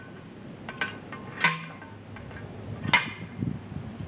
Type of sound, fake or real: real